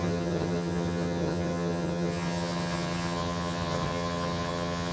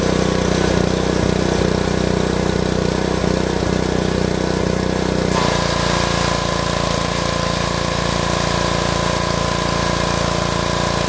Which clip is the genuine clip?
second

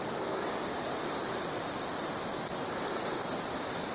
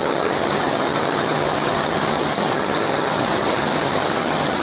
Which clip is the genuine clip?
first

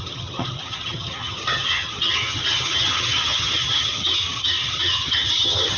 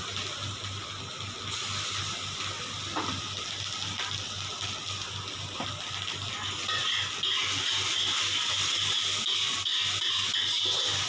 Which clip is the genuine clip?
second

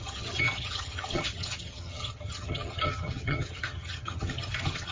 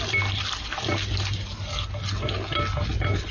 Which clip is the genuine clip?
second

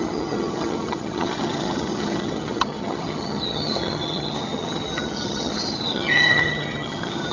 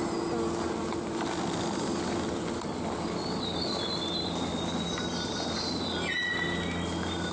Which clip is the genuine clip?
second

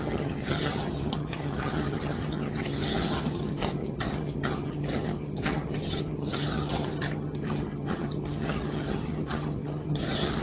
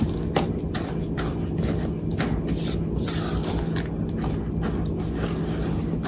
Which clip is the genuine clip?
second